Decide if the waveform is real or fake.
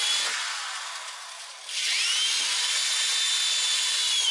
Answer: real